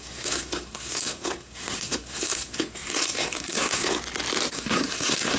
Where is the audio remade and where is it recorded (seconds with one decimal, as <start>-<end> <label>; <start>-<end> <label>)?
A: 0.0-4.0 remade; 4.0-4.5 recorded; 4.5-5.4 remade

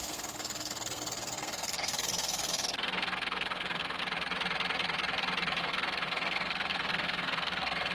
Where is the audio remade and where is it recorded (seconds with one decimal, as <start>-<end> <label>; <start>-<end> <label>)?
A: 0.0-4.0 remade; 4.0-5.6 recorded; 5.6-7.9 remade

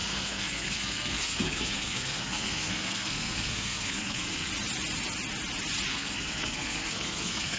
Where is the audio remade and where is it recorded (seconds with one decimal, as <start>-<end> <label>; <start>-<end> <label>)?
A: 0.0-4.5 remade; 4.5-5.9 recorded; 5.9-7.6 remade

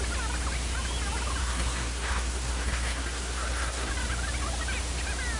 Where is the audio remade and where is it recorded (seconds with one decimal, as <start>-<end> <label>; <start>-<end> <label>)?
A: 0.0-1.4 recorded; 1.4-3.9 remade; 3.9-5.4 recorded

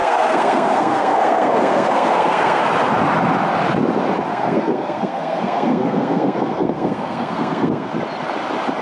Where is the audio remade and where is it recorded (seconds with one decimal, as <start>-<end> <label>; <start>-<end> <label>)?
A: 0.0-2.6 remade; 2.6-4.3 recorded; 4.3-7.9 remade; 7.9-8.8 recorded

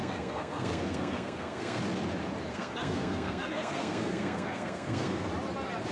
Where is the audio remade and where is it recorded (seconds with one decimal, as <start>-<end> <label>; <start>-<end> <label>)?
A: 0.0-1.8 remade; 1.8-2.5 recorded; 2.5-5.3 remade; 5.3-5.9 recorded

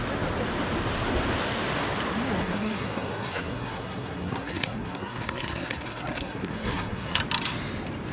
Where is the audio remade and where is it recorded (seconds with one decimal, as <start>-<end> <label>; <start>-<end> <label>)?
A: 0.0-2.4 recorded; 2.4-7.2 remade; 7.2-8.1 recorded

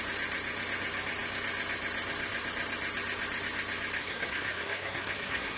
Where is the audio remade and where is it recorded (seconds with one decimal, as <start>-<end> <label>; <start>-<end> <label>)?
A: 0.0-4.0 recorded; 4.0-5.6 remade